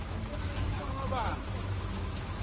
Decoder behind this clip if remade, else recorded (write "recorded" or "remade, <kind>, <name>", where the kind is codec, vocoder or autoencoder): remade, autoencoder, DAC-VAE